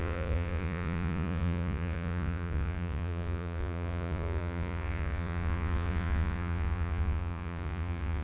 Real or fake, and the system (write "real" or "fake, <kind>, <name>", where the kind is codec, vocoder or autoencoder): fake, vocoder, Vocos